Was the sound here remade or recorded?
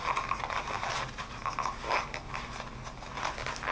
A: recorded